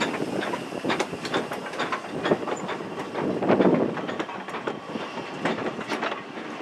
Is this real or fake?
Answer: real